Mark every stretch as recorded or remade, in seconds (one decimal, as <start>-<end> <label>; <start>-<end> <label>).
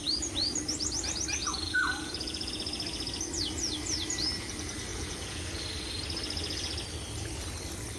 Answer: 0.0-1.4 recorded; 1.4-2.5 remade; 2.5-4.9 recorded; 4.9-5.6 remade; 5.6-8.0 recorded